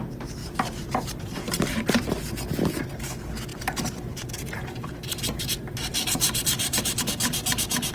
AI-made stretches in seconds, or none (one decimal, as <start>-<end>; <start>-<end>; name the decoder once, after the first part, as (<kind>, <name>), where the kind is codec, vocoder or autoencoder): 0.4-2.2 (vocoder, BigVGAN v2); 3.5-7.0

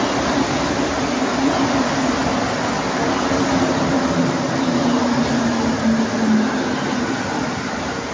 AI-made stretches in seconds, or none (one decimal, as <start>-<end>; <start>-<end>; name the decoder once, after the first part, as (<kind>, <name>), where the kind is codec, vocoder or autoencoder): none